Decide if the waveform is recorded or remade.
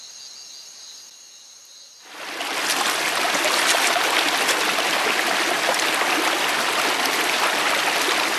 recorded